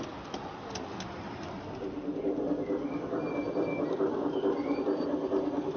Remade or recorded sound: recorded